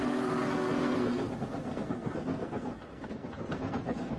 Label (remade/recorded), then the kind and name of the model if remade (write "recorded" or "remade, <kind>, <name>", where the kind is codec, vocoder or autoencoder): remade, codec, SNAC